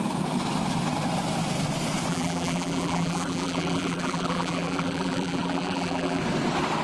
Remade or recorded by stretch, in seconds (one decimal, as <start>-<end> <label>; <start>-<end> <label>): 0.0-2.1 recorded; 2.1-6.2 remade; 6.2-6.8 recorded